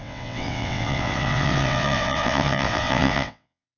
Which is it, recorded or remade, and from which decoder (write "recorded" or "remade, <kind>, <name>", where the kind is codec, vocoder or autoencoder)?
remade, vocoder, WaveNeXt